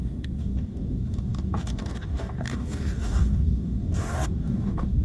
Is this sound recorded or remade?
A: remade